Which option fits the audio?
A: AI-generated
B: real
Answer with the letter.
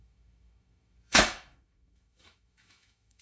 A